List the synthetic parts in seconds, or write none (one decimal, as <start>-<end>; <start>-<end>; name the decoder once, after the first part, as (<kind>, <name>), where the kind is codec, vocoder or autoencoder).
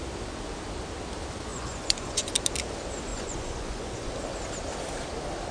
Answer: 1.5-2.3 (vocoder, Vocos); 3.1-4.1